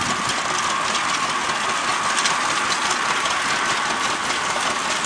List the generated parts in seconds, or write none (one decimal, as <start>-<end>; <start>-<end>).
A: none